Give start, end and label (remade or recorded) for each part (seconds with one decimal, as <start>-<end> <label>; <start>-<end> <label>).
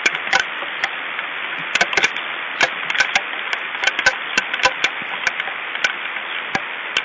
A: 0.0-7.0 recorded